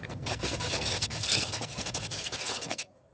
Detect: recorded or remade remade